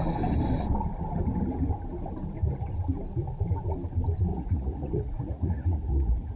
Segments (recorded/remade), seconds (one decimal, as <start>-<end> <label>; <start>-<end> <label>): 0.0-4.3 recorded; 4.3-6.4 remade